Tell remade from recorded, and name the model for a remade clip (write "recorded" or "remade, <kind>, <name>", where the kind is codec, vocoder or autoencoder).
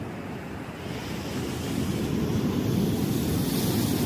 recorded